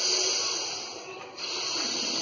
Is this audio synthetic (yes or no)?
no